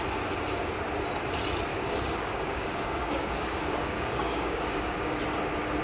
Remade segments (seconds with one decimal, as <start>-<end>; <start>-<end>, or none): 1.7-5.2